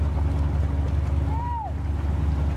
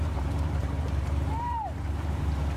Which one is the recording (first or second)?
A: first